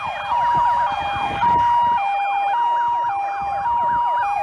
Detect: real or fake real